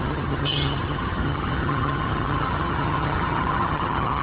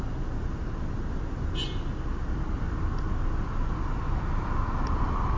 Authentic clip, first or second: second